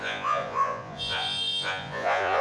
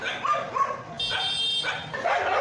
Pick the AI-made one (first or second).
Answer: first